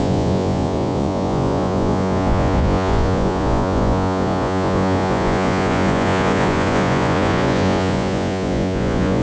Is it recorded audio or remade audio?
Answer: remade